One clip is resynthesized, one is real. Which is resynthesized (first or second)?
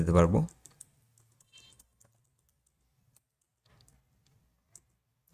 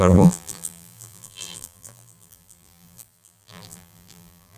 second